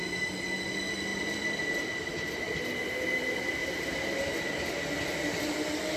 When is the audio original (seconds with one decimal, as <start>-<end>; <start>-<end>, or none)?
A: 0.0-1.1; 2.4-3.6; 4.6-6.0